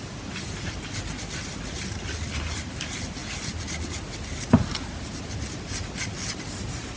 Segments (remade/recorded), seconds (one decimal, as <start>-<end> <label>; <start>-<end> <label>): 0.0-7.0 recorded